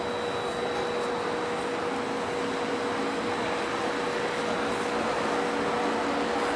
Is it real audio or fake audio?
real